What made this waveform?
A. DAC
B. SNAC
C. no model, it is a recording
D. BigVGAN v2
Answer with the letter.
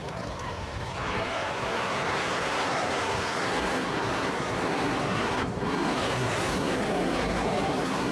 B